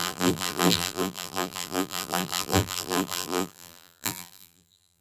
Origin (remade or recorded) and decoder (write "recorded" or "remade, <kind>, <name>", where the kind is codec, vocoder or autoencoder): remade, vocoder, BigVGAN v2